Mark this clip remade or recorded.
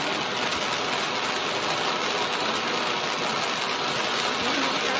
recorded